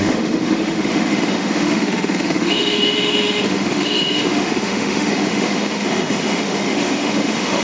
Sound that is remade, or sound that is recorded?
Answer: remade